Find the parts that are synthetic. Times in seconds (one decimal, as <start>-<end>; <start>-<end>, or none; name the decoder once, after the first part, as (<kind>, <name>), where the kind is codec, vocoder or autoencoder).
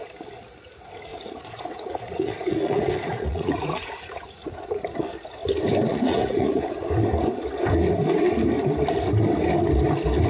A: 1.1-4.8 (vocoder, Vocos); 5.9-6.9